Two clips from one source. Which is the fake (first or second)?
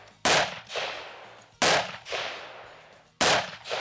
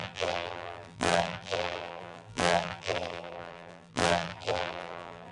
second